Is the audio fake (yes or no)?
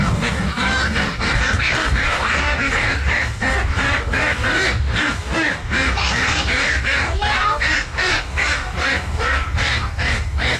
yes